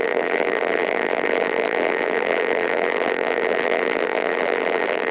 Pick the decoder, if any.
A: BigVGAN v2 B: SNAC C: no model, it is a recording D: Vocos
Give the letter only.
A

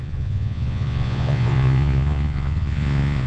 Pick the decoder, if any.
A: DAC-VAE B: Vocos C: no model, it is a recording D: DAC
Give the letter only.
B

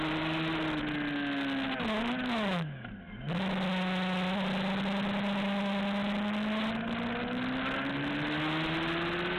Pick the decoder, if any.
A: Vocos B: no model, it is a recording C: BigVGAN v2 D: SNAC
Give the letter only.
B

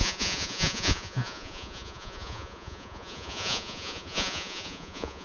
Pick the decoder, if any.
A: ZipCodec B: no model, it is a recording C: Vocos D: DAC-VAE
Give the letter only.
C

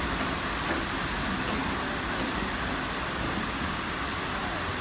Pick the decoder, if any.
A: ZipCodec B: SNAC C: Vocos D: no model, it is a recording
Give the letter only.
D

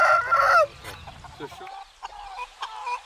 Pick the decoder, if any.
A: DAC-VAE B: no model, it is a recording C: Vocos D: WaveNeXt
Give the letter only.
B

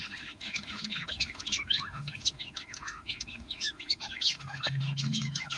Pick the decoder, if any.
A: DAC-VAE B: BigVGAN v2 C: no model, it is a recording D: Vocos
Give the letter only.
A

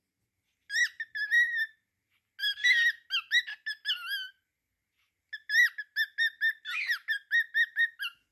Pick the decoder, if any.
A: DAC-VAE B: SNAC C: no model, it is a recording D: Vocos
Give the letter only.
C